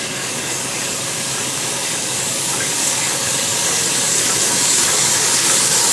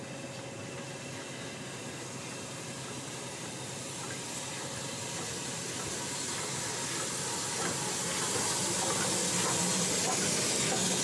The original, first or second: second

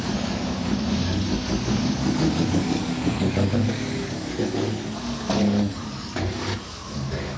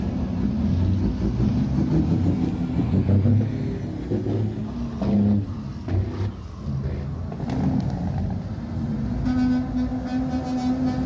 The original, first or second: second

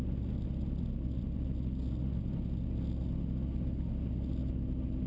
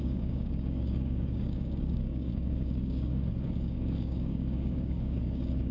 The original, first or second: first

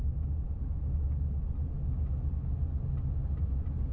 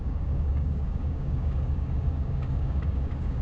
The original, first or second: first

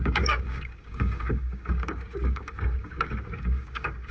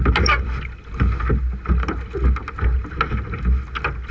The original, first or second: second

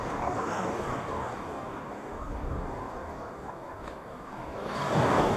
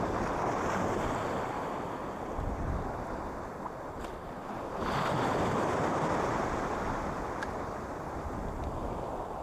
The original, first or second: second